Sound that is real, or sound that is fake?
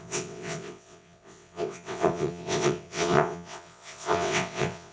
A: fake